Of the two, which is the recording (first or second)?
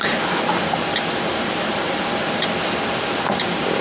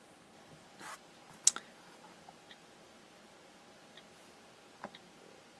second